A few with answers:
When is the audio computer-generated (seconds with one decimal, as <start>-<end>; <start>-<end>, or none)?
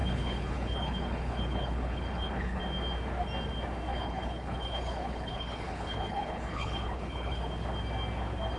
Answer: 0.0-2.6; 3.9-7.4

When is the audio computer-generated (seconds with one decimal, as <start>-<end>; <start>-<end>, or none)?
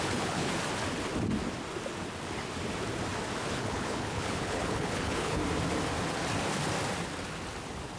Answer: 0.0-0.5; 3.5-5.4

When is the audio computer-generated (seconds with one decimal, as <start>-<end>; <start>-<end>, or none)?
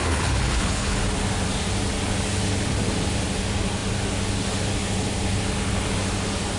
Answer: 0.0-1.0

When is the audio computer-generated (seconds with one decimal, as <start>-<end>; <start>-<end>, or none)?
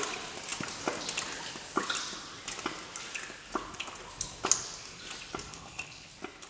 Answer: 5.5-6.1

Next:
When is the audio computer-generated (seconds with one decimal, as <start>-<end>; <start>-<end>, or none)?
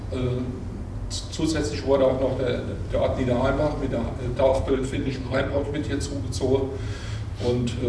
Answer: 4.5-5.7